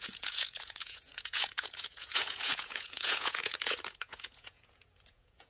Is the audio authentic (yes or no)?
no